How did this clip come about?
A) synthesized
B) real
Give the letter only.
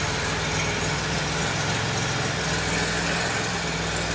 B